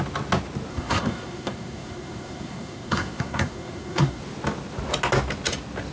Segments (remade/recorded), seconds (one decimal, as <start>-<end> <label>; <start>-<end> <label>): 0.0-0.7 recorded; 0.7-4.2 remade; 4.2-5.9 recorded